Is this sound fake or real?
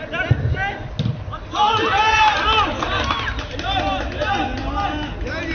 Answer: real